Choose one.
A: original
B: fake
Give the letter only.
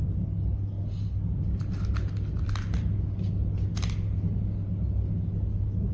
A